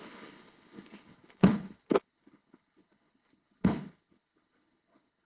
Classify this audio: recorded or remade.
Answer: remade